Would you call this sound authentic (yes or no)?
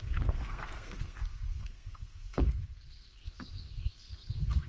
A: no